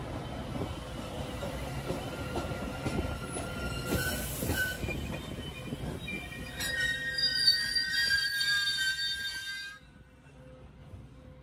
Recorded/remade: recorded